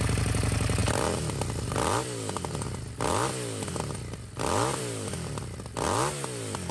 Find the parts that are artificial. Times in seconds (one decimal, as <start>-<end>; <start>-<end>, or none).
none